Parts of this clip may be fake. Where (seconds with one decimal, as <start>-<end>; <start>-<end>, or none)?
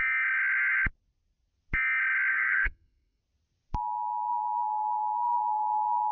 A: 2.3-3.2; 4.3-6.1